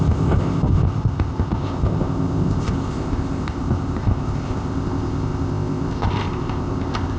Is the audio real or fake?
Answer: fake